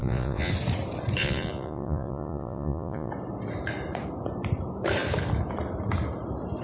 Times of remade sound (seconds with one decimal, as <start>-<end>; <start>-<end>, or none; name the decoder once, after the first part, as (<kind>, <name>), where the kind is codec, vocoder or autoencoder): 0.0-0.5 (vocoder, Vocos); 1.2-3.1